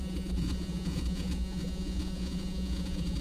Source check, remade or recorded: remade